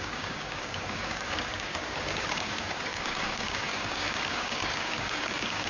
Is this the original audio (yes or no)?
no